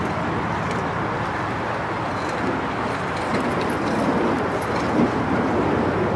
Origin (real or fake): fake